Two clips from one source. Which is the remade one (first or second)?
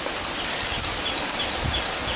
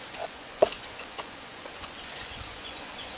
second